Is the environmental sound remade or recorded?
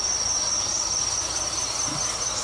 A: recorded